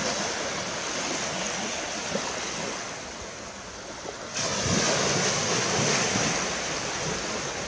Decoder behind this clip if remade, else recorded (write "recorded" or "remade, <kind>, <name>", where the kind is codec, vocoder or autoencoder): recorded